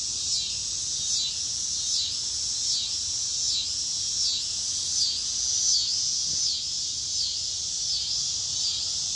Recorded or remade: recorded